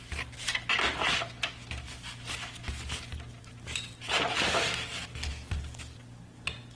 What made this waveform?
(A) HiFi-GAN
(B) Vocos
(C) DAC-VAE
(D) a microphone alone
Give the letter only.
D